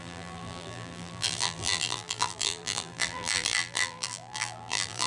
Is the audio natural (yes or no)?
no